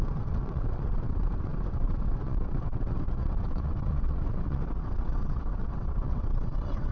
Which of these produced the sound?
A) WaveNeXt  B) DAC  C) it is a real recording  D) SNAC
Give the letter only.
A